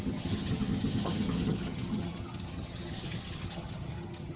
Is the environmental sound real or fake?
fake